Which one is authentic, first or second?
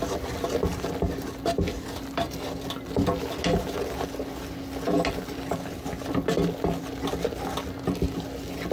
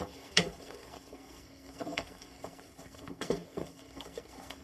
first